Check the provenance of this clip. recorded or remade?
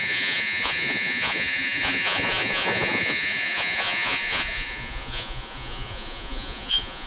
remade